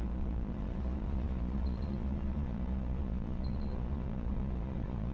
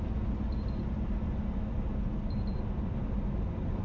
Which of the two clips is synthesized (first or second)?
first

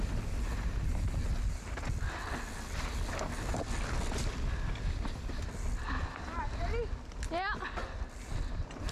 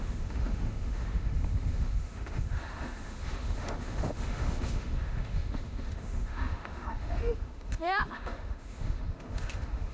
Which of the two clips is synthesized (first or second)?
second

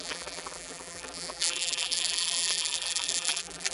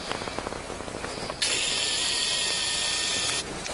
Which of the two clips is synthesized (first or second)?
first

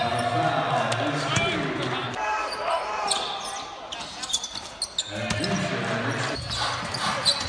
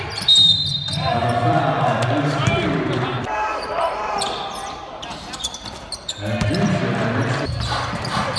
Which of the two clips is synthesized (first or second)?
second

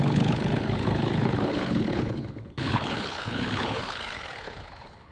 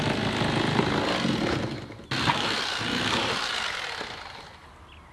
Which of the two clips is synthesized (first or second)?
first